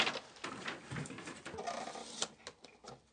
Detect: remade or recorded recorded